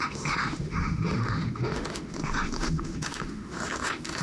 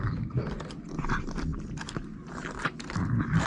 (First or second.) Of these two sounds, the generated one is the first